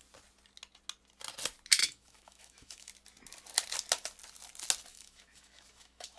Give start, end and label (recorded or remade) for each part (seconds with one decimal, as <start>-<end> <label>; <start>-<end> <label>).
0.0-1.8 recorded; 1.8-2.9 remade; 2.9-4.9 recorded; 4.9-6.2 remade